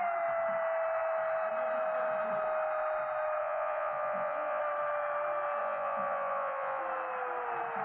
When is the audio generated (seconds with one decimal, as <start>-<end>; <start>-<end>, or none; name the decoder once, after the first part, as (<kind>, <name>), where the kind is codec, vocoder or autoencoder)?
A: 3.4-4.6 (vocoder, Vocos); 5.6-6.8

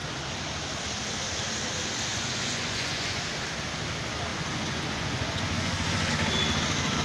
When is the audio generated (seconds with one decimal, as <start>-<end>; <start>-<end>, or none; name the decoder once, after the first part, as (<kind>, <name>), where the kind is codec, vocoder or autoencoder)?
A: 2.1-3.2 (vocoder, Vocos); 4.3-6.1

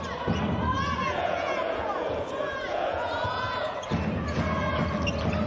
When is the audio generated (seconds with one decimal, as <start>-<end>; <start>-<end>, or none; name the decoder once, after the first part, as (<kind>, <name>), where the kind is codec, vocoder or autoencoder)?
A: 0.7-3.9 (vocoder, Vocos)

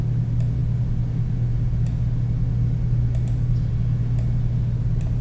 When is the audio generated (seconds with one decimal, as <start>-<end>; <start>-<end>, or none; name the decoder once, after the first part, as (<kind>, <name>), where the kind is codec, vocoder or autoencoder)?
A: none

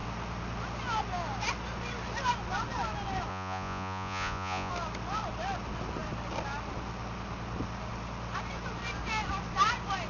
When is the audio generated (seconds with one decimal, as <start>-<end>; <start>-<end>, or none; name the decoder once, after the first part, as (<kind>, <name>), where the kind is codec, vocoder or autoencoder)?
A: 3.3-4.7 (vocoder, Vocos)

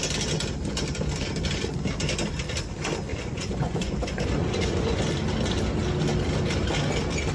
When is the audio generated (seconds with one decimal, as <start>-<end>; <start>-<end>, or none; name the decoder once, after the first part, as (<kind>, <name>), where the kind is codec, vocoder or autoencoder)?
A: 3.1-5.0 (vocoder, Vocos)

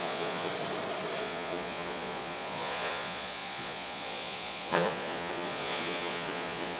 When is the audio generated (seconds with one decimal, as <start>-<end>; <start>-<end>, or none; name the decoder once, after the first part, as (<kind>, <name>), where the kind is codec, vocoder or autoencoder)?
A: 0.0-0.5 (vocoder, Vocos); 1.2-6.8